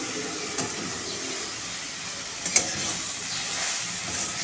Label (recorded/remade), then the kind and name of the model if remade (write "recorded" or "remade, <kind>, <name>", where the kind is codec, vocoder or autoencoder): recorded